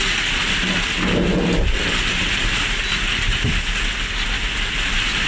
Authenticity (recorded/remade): recorded